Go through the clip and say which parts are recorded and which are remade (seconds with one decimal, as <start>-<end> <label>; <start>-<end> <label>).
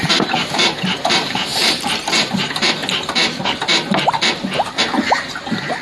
0.0-2.8 remade; 2.8-5.1 recorded; 5.1-5.8 remade